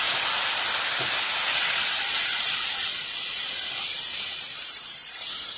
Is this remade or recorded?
remade